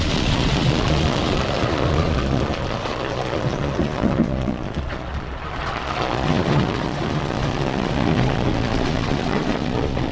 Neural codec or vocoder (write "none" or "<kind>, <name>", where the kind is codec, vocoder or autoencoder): vocoder, Vocos